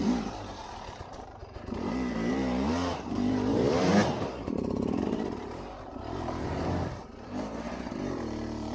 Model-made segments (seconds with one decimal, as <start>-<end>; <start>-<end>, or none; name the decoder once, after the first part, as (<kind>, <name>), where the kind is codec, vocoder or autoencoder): 0.0-8.7 (vocoder, BigVGAN v2)